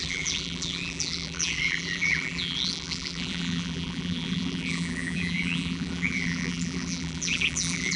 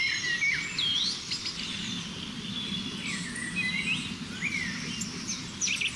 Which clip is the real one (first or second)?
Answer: second